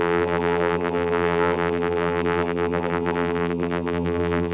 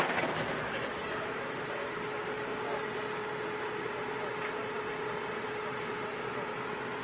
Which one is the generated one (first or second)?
first